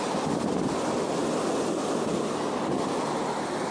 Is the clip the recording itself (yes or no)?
yes